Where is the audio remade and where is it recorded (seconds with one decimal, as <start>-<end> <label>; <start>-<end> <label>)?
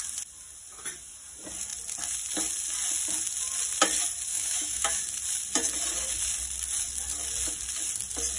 0.0-4.3 recorded; 4.3-5.0 remade; 5.0-8.4 recorded